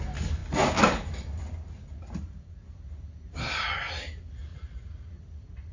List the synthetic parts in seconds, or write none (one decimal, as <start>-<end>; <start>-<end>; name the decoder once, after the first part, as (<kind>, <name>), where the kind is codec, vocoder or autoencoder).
4.5-5.1 (vocoder, Vocos)

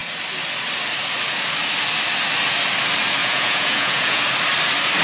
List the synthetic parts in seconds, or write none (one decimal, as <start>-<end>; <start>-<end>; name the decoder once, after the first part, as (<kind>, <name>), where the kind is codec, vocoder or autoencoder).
3.2-4.2 (vocoder, Vocos)

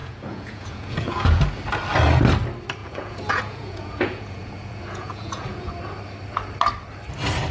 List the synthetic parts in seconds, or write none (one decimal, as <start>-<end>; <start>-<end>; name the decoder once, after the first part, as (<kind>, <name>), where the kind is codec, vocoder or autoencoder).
0.0-1.4 (vocoder, Vocos); 2.8-5.7

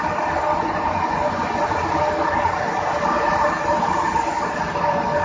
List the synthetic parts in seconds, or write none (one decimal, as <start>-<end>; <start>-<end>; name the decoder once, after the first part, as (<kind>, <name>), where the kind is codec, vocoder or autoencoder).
0.6-1.6 (vocoder, Vocos)

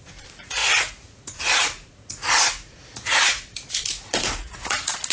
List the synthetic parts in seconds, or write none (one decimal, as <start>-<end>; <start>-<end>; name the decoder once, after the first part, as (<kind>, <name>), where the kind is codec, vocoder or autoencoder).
0.0-5.1 (vocoder, Vocos)

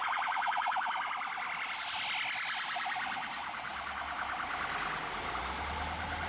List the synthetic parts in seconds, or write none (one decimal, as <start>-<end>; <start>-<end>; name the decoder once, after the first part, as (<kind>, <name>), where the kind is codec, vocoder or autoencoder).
0.0-0.9 (vocoder, Vocos)